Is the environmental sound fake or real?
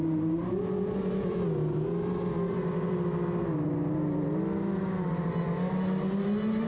real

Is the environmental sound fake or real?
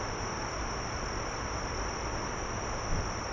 fake